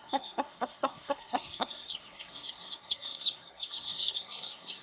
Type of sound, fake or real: fake